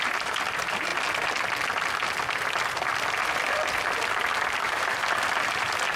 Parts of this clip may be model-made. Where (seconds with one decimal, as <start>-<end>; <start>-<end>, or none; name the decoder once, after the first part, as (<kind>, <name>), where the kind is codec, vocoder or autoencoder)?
0.0-0.9 (vocoder, BigVGAN v2); 4.5-5.0